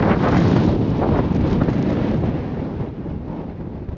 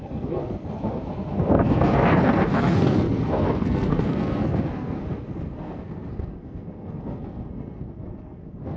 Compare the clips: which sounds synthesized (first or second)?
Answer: second